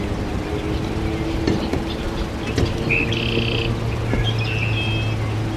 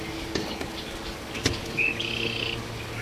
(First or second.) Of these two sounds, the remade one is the second